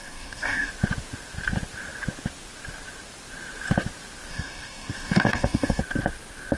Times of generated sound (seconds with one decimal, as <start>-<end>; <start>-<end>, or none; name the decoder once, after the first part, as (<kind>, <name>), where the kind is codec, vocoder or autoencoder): 0.0-0.7 (codec, DAC); 4.3-5.8

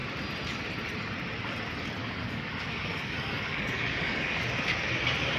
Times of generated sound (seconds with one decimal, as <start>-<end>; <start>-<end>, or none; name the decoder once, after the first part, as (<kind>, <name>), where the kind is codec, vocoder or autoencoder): 2.0-4.4 (codec, DAC)